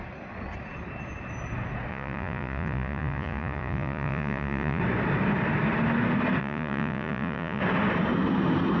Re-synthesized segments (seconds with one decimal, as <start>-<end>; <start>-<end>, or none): 1.9-4.8; 6.4-7.6